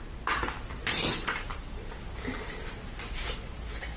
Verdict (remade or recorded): recorded